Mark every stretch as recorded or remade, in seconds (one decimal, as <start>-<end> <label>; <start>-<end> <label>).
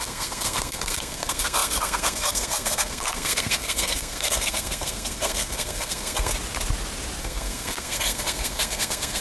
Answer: 0.0-6.3 remade; 6.3-7.2 recorded; 7.2-9.2 remade